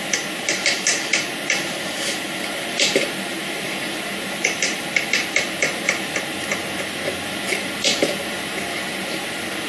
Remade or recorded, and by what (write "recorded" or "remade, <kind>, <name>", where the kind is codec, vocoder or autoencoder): remade, vocoder, BigVGAN v2